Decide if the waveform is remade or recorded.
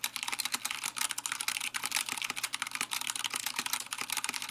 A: recorded